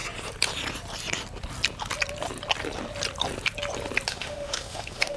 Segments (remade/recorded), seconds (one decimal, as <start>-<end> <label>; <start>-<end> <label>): 0.0-4.1 recorded; 4.1-5.2 remade